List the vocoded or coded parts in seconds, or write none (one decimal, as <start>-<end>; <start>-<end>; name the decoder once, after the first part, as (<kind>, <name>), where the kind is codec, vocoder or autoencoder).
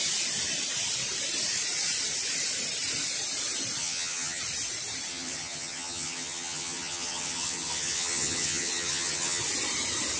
3.8-4.4 (vocoder, HiFi-GAN); 5.1-9.4